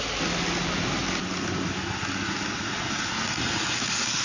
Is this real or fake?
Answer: real